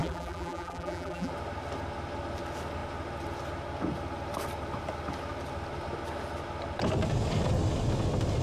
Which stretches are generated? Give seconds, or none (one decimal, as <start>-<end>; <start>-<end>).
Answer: 0.0-1.3